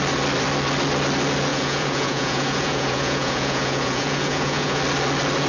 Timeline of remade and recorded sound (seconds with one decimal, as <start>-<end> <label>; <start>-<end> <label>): 0.0-1.5 recorded; 1.5-4.8 remade; 4.8-5.5 recorded